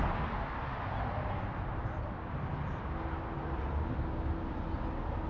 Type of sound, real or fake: real